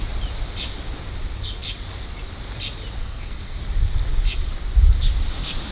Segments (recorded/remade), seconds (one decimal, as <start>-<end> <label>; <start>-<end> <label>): 0.0-3.0 recorded; 3.0-3.6 remade; 3.6-5.7 recorded